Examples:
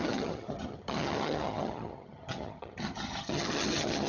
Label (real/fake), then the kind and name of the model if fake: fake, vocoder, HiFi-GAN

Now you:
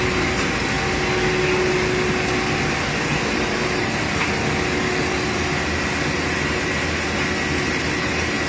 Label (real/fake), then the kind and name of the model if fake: real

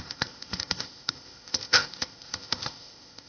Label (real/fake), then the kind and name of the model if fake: fake, codec, ZipCodec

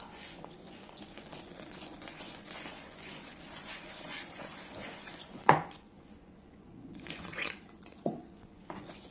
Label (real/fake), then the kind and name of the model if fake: fake, vocoder, Vocos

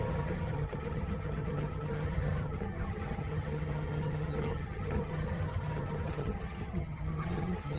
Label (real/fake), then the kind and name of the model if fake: fake, vocoder, HiFi-GAN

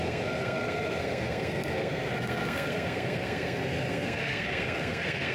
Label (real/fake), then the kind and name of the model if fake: fake, codec, SNAC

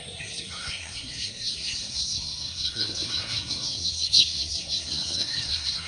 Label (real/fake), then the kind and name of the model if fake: fake, codec, SNAC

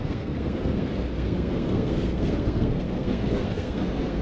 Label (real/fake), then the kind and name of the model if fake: fake, codec, SNAC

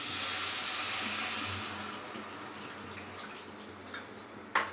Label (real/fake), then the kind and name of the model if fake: real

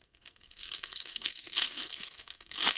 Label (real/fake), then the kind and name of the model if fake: fake, codec, SNAC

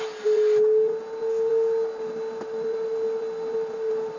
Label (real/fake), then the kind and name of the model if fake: real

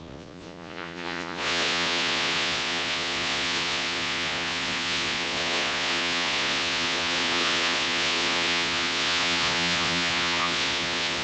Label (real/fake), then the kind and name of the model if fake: fake, vocoder, Vocos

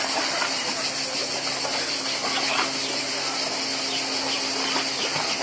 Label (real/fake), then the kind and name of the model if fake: real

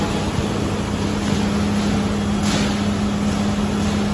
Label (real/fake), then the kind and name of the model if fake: real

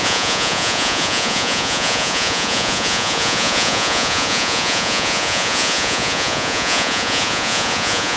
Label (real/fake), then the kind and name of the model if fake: fake, vocoder, Vocos